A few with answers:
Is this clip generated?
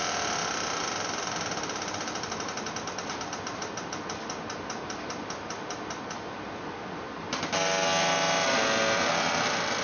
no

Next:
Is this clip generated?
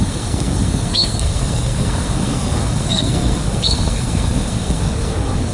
yes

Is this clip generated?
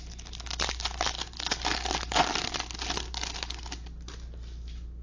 no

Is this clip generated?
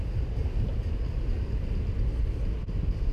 no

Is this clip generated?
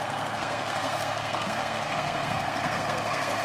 yes